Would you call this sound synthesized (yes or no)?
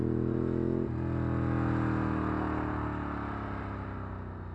no